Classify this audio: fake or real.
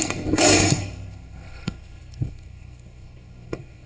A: fake